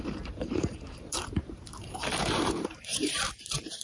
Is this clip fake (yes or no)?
yes